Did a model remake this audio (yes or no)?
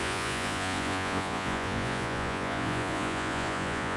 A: yes